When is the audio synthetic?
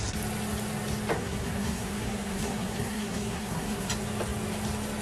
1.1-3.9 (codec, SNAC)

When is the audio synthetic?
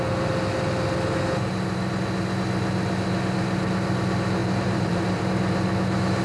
4.4-5.2 (vocoder, BigVGAN v2)